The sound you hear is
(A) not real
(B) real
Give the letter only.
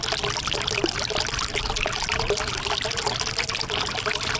B